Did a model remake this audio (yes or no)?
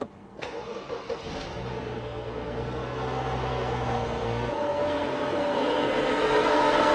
yes